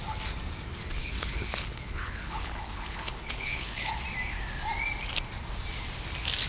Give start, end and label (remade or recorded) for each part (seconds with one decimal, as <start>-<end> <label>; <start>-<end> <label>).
0.0-1.0 recorded; 1.0-4.0 remade; 4.0-6.5 recorded